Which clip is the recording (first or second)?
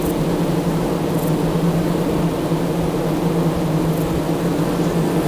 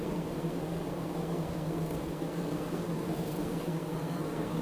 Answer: first